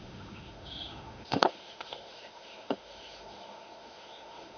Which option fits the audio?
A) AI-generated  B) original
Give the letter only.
A